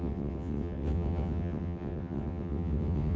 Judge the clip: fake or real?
fake